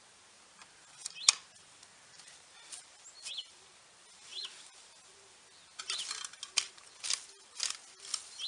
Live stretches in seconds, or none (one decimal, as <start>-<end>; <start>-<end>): 0.0-8.5